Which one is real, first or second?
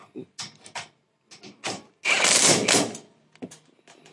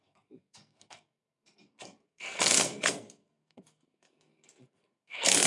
first